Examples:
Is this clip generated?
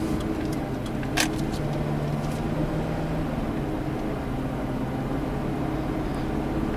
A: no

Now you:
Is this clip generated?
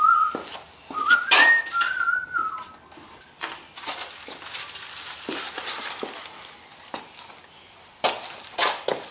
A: no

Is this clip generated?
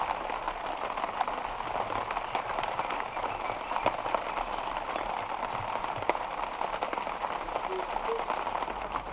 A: no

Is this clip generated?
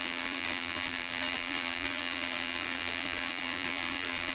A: yes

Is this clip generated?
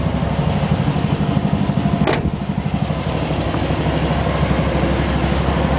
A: no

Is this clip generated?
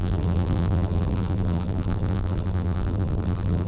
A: yes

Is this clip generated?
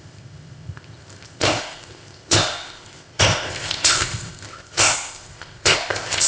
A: yes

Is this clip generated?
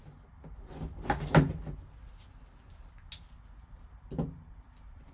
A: no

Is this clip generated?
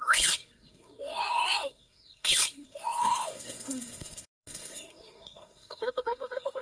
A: yes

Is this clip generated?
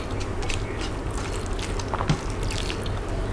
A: no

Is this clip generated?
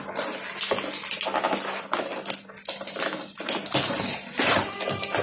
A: no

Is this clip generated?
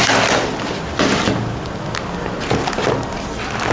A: no